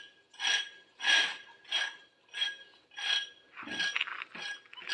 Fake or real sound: real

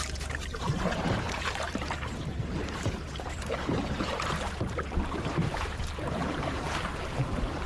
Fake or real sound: fake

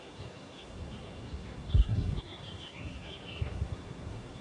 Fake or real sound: fake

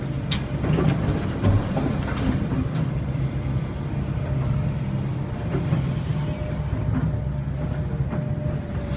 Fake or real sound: real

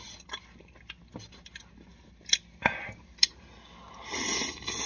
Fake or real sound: real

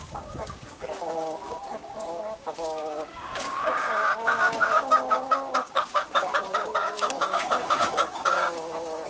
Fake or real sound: fake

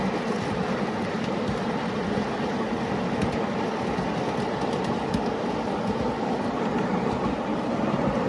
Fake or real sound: real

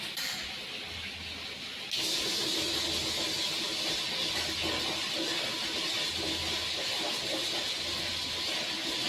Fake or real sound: real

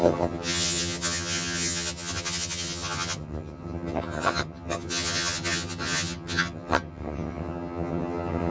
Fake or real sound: fake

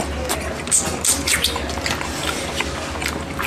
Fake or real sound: real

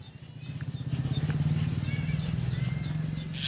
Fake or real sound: real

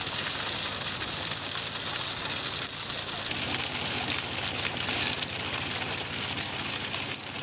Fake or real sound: real